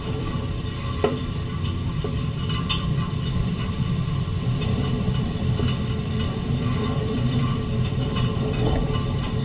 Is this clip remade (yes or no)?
yes